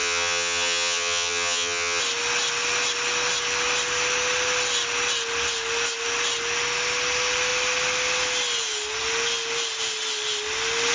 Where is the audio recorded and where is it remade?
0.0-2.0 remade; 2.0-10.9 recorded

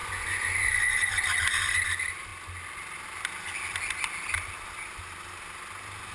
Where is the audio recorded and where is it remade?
0.0-1.1 remade; 1.1-6.1 recorded

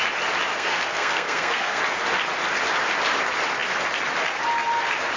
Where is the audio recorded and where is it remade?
0.0-0.5 recorded; 0.5-1.8 remade; 1.8-5.2 recorded

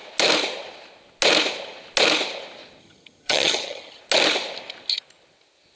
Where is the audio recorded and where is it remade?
0.0-2.8 recorded; 2.8-4.0 remade; 4.0-5.8 recorded

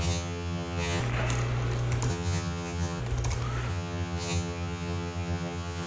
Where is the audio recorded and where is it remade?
0.0-1.0 remade; 1.0-2.1 recorded; 2.1-3.0 remade; 3.0-3.7 recorded; 3.7-5.9 remade

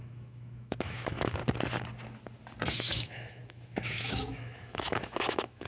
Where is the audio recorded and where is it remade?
0.0-1.4 remade; 1.4-2.7 recorded; 2.7-5.7 remade

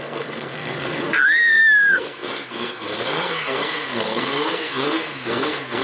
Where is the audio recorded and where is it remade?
0.0-5.8 remade

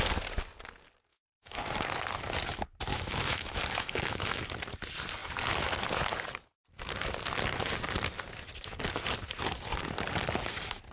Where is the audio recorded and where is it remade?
0.0-1.1 recorded; 1.1-1.6 remade; 1.6-2.9 recorded; 2.9-4.4 remade; 4.4-10.9 recorded